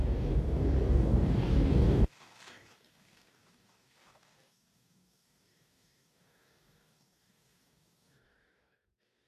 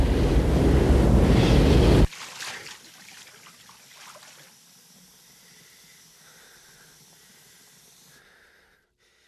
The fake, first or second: first